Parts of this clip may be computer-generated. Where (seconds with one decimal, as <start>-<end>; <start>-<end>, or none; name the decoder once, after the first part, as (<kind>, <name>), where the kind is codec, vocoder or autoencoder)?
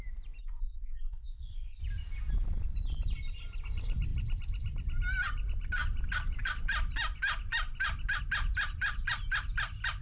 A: 0.4-1.8 (codec, ZipCodec)